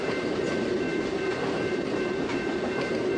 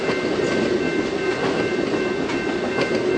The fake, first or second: first